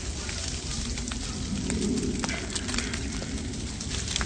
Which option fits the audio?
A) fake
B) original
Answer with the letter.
B